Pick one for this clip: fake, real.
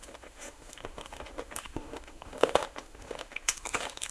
fake